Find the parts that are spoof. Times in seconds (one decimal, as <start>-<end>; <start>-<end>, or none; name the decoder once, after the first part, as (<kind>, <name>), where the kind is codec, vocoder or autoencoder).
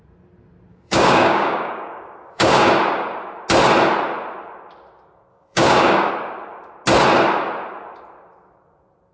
0.7-2.7 (codec, DAC); 5.3-6.1